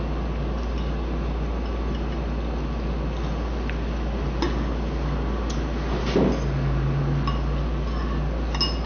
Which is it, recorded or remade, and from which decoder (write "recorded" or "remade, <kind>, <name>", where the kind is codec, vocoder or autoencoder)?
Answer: recorded